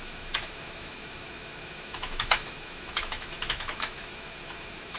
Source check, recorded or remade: remade